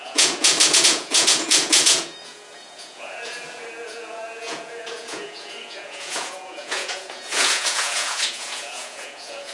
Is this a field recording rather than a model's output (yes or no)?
no